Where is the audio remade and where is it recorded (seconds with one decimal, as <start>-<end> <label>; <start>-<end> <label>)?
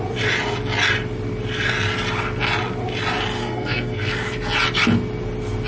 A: 0.0-3.4 recorded; 3.4-4.1 remade; 4.1-5.7 recorded